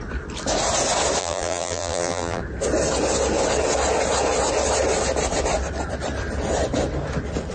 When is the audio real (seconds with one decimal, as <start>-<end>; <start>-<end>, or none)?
0.0-1.2; 2.4-7.5